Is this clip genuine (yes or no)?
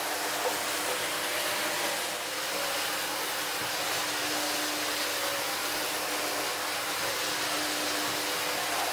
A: yes